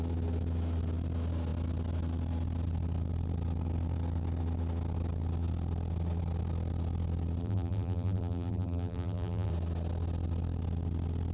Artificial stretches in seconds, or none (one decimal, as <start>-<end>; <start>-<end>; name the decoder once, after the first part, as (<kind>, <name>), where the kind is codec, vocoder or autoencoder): 7.4-9.5 (vocoder, BigVGAN v2)